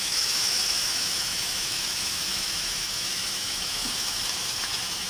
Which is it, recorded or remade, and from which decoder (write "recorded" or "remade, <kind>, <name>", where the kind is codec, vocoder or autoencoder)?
remade, autoencoder, DAC-VAE